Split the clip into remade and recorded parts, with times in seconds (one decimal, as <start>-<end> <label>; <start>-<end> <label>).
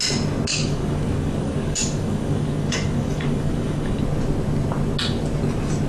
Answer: 0.0-0.5 recorded; 0.5-4.0 remade; 4.0-5.9 recorded